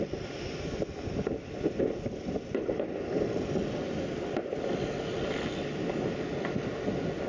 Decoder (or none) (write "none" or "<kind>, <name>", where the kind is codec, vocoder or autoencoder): none